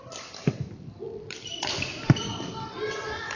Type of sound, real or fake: real